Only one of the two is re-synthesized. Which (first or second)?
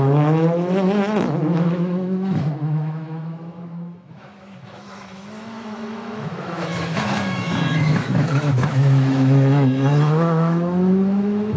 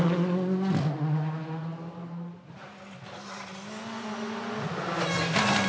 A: first